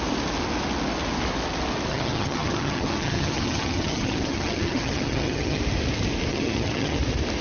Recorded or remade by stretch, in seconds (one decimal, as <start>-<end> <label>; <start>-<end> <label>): 0.0-1.9 recorded; 1.9-5.6 remade; 5.6-6.3 recorded; 6.3-7.0 remade; 7.0-7.4 recorded